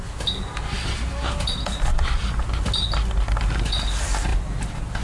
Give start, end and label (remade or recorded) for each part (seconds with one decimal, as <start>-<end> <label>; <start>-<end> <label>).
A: 0.0-4.3 recorded; 4.3-5.0 remade